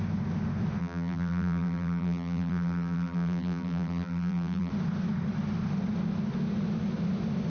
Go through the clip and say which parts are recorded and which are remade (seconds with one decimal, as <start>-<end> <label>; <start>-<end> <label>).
0.0-0.8 recorded; 0.8-4.7 remade; 4.7-7.5 recorded